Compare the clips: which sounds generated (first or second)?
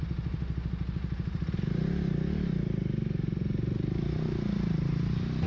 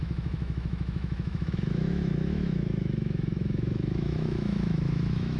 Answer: second